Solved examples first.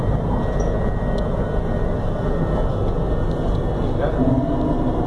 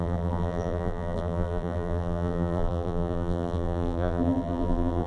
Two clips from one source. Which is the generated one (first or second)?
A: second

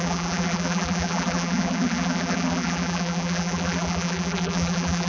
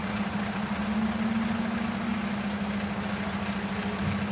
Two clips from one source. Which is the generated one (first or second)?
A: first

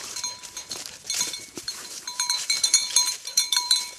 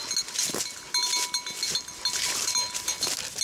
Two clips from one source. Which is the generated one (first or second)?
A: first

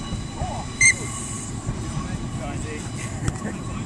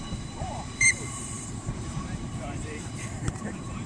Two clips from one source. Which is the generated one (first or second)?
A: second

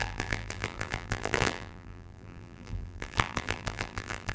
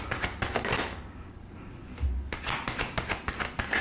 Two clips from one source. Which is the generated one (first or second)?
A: first